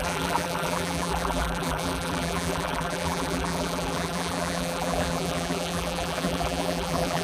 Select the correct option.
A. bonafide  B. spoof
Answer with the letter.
B